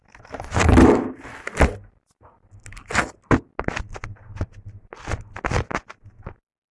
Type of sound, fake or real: real